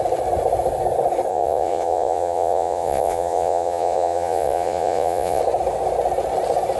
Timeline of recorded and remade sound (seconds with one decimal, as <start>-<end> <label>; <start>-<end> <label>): 0.0-1.3 recorded; 1.3-5.4 remade; 5.4-6.8 recorded